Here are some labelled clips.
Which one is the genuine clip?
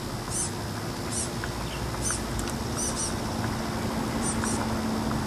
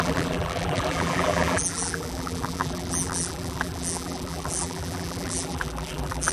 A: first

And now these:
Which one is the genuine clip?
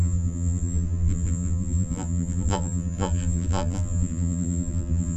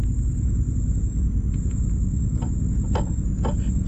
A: second